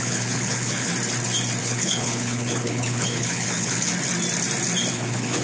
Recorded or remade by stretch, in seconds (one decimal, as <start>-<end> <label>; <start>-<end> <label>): 0.0-0.9 remade; 0.9-1.6 recorded; 1.6-3.9 remade; 3.9-4.9 recorded; 4.9-5.4 remade